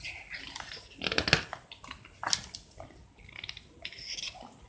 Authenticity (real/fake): real